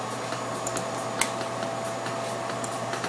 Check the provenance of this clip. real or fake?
real